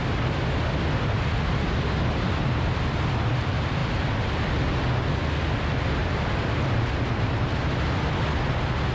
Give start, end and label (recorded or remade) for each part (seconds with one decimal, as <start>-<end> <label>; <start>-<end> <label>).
0.0-6.0 recorded; 6.0-7.5 remade; 7.5-8.9 recorded